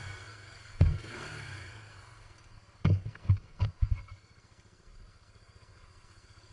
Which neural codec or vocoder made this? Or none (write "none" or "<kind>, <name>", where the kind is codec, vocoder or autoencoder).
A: codec, SNAC